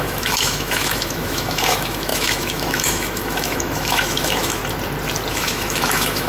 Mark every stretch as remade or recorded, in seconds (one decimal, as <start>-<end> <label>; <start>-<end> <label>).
0.0-4.6 remade; 4.6-5.3 recorded; 5.3-6.3 remade